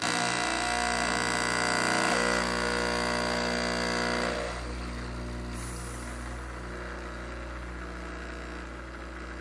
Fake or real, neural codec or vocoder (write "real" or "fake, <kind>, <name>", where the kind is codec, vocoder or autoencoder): real